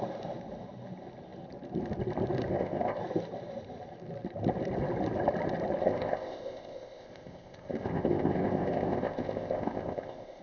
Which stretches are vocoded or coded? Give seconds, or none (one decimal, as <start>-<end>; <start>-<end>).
2.5-3.0; 5.8-10.4